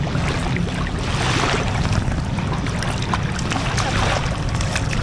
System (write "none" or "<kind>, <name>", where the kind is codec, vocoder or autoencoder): none